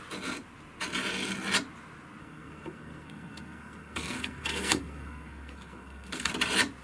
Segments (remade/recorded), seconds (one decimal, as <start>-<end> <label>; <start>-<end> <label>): 0.0-2.2 recorded; 2.2-6.3 remade; 6.3-6.8 recorded